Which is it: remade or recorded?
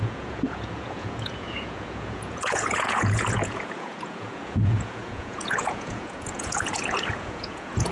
remade